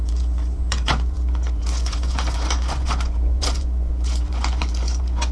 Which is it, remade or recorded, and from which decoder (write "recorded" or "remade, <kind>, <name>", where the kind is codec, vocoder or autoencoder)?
remade, vocoder, Vocos